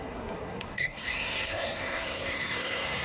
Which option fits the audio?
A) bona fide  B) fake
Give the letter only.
B